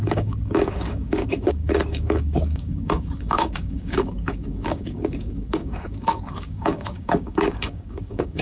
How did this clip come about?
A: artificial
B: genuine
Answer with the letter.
A